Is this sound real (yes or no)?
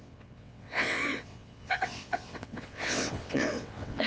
no